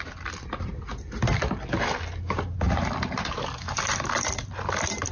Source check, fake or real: real